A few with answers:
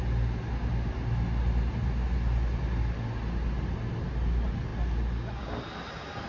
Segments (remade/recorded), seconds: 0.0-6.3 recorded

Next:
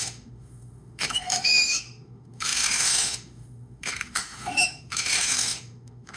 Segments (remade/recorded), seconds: 0.0-6.2 remade

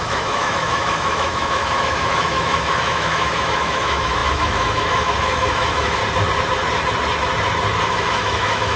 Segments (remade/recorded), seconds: 0.0-6.0 remade; 6.0-7.9 recorded; 7.9-8.8 remade